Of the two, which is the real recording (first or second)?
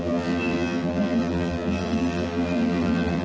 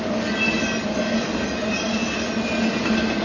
second